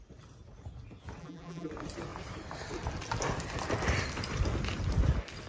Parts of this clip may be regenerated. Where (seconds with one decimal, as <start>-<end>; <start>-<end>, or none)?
1.2-1.7